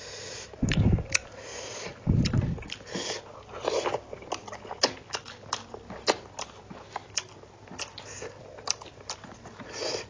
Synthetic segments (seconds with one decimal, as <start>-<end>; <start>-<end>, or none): none